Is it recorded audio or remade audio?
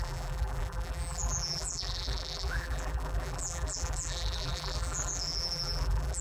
remade